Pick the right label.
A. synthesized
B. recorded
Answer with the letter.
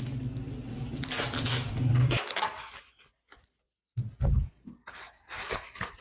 B